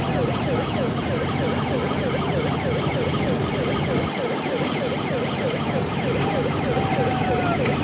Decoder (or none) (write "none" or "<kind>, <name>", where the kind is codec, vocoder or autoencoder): none